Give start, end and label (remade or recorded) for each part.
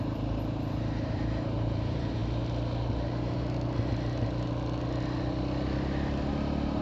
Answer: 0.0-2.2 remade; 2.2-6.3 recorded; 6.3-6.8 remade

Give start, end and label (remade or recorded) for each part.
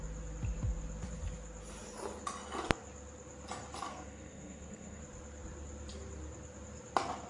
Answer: 0.0-3.9 recorded; 3.9-5.0 remade; 5.0-7.3 recorded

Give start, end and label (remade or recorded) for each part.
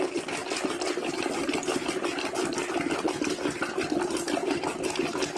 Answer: 0.0-5.4 recorded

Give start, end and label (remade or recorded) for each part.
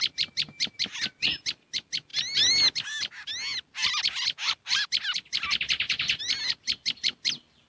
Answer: 0.0-7.7 recorded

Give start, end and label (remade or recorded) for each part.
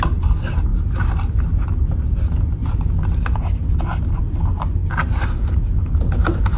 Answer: 0.0-6.6 recorded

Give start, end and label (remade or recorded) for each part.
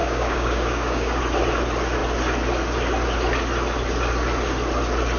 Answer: 0.0-1.2 remade; 1.2-5.2 recorded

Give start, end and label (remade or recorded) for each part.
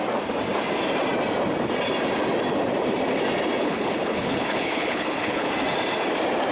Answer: 0.0-3.6 recorded; 3.6-5.5 remade; 5.5-6.5 recorded